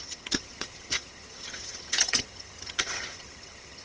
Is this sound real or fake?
fake